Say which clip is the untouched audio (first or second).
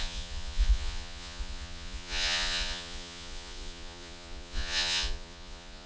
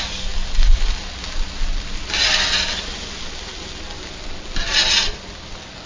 second